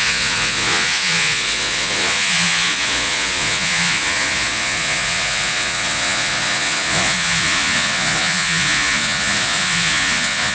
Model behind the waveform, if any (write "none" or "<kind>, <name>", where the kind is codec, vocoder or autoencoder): vocoder, Vocos